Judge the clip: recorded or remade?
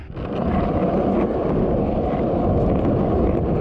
recorded